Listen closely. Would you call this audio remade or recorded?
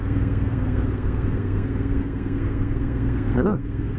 remade